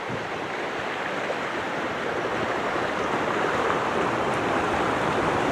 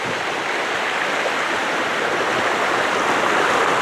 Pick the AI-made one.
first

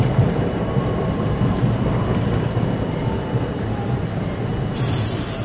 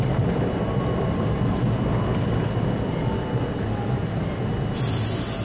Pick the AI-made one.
first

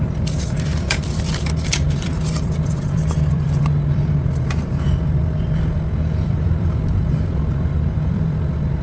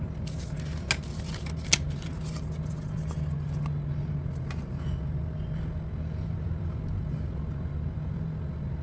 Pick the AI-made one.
first